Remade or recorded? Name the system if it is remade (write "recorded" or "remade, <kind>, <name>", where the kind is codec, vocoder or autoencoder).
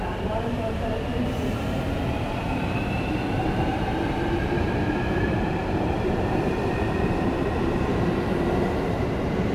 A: remade, vocoder, BigVGAN v2